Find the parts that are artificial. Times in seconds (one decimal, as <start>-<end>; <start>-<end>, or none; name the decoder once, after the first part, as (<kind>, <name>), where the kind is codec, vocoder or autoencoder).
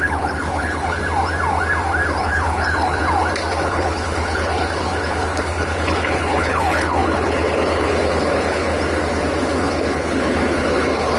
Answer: 0.0-1.0 (codec, HILCodec); 2.2-3.0; 3.7-8.7; 9.4-11.2